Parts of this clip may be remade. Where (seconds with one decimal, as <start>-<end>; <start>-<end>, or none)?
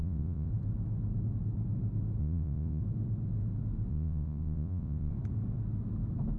0.0-0.5; 2.2-2.8; 3.9-5.1